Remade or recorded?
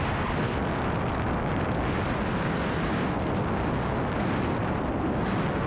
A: recorded